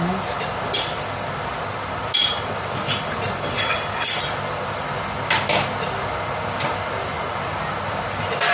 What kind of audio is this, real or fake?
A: real